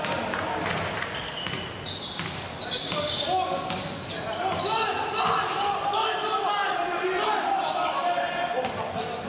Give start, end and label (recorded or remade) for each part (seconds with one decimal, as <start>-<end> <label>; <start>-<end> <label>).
0.0-9.3 recorded